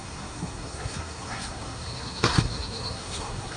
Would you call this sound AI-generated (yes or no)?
yes